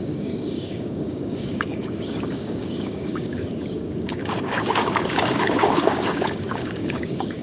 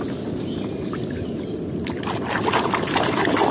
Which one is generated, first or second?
first